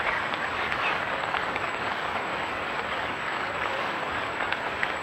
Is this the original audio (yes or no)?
no